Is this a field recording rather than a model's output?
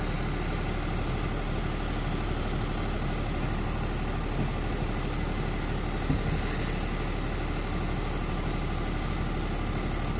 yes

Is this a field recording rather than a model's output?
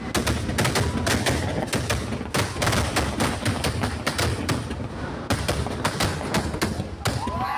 yes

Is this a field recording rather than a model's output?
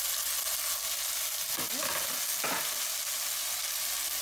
yes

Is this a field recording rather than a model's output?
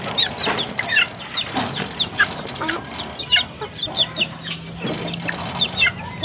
yes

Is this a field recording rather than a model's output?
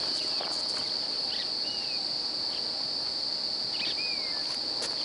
yes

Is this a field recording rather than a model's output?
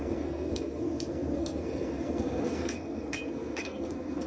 no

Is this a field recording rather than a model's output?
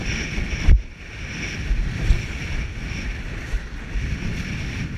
yes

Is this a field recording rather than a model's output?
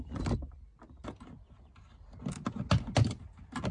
yes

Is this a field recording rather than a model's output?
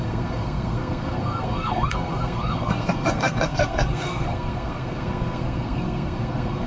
no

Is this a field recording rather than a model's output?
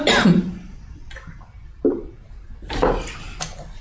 yes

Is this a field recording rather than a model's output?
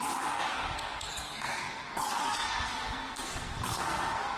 no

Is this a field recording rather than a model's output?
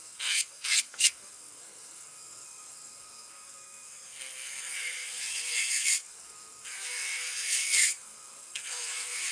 no